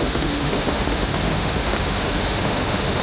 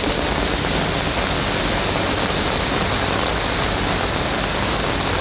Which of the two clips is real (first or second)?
second